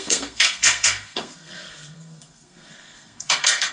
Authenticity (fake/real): fake